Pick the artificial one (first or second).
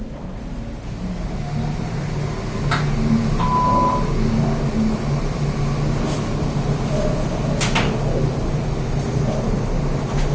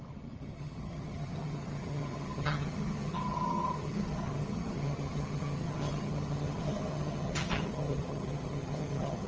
second